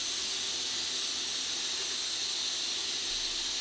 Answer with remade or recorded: recorded